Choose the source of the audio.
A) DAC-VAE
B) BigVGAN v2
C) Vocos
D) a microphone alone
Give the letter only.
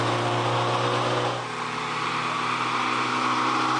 D